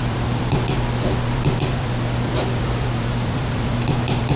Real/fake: fake